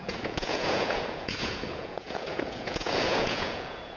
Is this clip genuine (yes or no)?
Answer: no